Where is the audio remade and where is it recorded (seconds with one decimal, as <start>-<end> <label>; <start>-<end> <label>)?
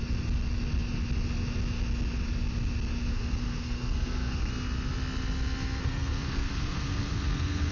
0.0-3.1 recorded; 3.1-4.5 remade; 4.5-5.8 recorded; 5.8-7.7 remade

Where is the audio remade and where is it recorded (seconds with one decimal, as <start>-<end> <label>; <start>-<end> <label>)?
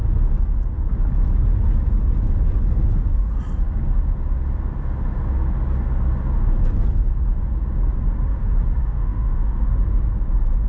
0.0-8.8 recorded; 8.8-9.6 remade; 9.6-10.7 recorded